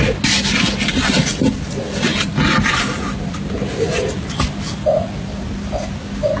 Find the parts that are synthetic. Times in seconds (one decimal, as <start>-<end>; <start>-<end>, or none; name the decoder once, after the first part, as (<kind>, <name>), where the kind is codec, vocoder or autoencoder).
none